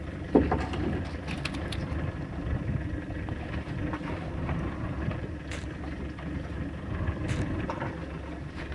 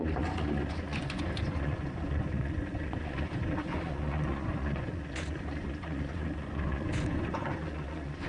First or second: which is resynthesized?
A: second